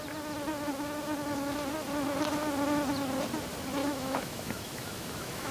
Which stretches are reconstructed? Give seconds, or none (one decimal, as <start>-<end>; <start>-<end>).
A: 3.8-5.5

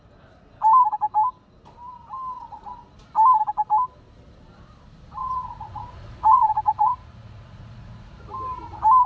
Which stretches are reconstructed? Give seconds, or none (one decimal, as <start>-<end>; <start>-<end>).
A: 5.2-8.2

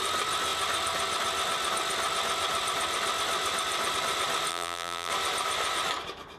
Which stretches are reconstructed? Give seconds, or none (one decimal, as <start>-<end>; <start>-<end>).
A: 4.5-5.1